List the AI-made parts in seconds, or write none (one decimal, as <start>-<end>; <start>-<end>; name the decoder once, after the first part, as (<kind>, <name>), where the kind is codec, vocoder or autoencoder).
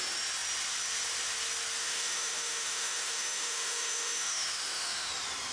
1.8-5.1 (autoencoder, DAC-VAE)